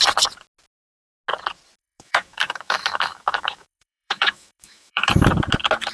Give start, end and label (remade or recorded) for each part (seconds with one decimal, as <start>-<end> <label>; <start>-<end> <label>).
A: 0.0-1.8 recorded; 1.8-5.1 remade; 5.1-5.9 recorded